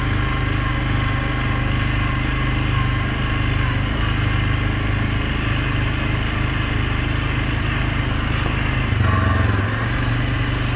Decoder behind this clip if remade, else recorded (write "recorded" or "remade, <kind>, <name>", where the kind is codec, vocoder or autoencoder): recorded